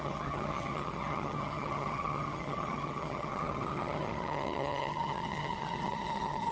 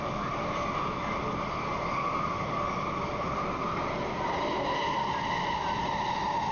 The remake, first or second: first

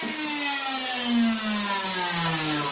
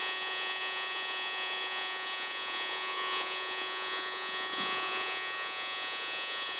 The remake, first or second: second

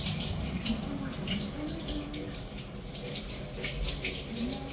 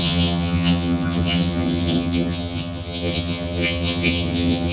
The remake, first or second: second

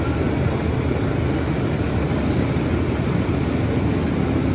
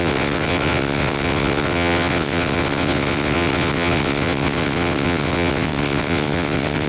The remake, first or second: second